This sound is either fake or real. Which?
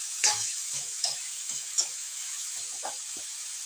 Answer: fake